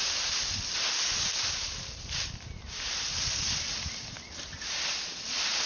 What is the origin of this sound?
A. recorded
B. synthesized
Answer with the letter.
A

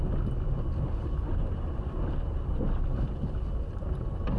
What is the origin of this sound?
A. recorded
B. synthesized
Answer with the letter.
A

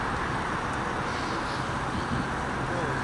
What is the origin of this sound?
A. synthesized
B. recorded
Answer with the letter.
B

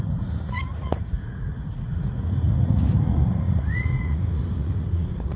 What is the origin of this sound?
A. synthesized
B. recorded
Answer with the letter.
A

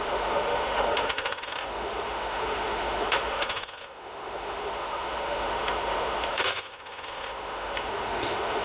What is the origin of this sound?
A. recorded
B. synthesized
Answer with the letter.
B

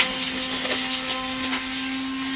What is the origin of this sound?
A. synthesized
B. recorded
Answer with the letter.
B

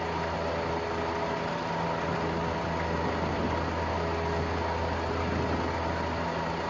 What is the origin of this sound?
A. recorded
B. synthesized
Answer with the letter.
A